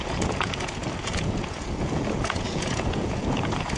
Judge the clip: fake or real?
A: fake